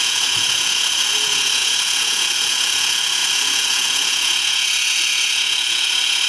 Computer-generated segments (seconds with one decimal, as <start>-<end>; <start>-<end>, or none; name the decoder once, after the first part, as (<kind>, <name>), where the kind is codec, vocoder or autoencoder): 0.0-6.3 (vocoder, Vocos)